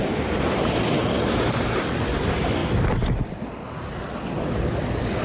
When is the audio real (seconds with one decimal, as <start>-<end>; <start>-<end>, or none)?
0.0-5.2